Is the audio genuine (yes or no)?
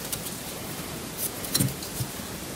yes